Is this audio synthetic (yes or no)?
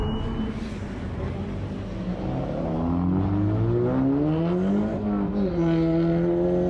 no